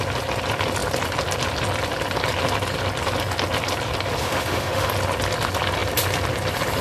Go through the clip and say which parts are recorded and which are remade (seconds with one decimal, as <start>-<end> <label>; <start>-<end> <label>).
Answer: 0.0-4.2 recorded; 4.2-4.9 remade; 4.9-6.8 recorded